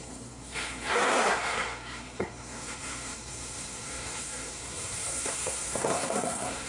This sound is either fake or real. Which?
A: fake